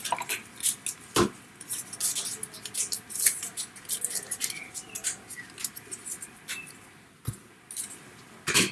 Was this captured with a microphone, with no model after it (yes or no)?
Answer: yes